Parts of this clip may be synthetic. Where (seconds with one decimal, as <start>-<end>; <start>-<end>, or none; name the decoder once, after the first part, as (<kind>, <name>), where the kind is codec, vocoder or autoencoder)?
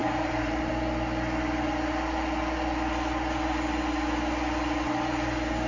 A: 0.0-0.7 (vocoder, BigVGAN v2)